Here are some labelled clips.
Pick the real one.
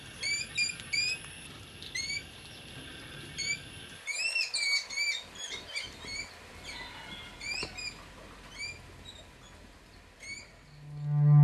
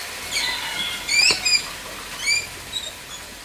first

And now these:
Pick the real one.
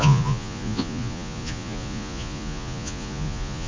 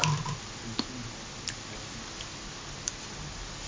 second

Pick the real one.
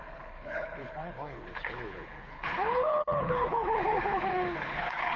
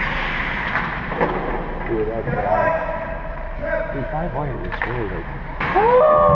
second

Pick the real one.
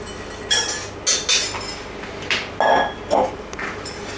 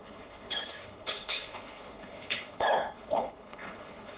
first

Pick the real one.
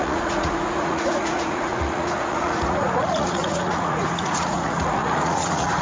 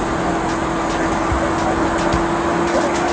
second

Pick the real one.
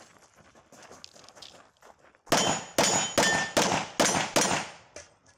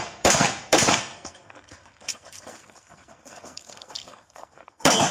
first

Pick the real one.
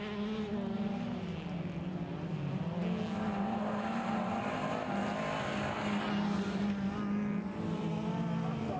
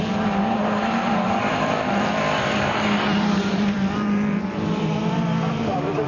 first